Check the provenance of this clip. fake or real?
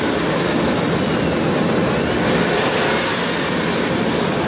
real